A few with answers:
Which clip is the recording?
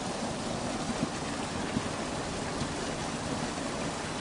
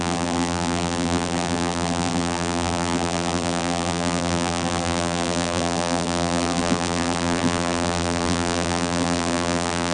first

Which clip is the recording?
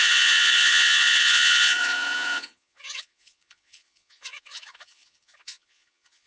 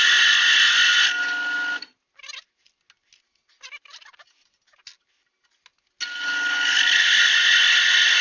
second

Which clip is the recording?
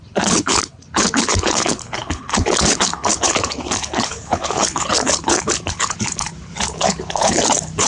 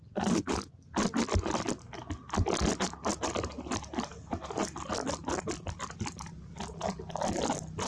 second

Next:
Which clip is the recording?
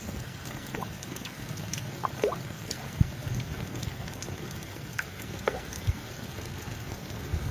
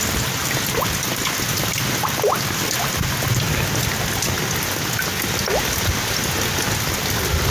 second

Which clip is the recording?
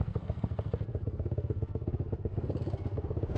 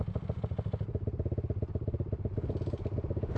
second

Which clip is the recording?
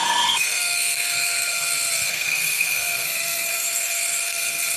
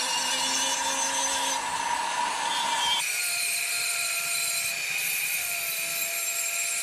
second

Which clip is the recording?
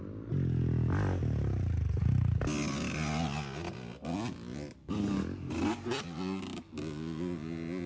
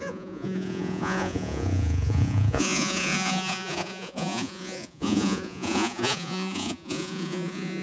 first